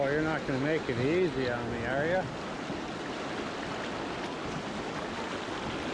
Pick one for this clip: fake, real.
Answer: real